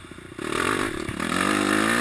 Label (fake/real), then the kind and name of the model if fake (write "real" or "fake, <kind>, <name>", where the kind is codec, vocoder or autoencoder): real